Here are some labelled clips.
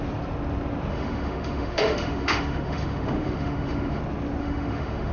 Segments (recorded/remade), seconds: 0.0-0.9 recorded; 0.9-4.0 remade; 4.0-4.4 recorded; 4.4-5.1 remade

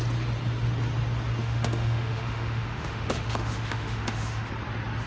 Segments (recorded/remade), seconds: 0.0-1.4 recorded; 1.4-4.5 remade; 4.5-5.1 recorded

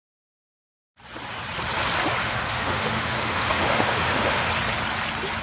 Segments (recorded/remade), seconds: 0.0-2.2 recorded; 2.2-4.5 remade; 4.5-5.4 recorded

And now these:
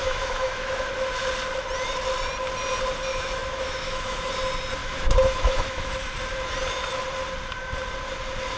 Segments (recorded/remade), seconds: 0.0-0.8 remade; 0.8-3.1 recorded; 3.1-4.3 remade; 4.3-4.8 recorded; 4.8-5.9 remade; 5.9-8.6 recorded

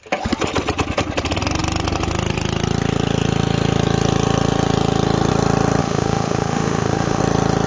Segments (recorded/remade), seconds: 0.0-5.8 recorded; 5.8-7.2 remade; 7.2-7.7 recorded